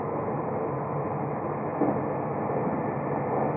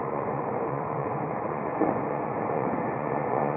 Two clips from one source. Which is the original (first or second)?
first